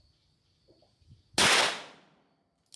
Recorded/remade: recorded